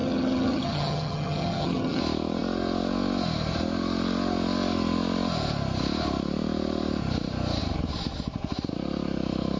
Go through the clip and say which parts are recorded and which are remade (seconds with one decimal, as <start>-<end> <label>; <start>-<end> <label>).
0.0-2.0 remade; 2.0-9.6 recorded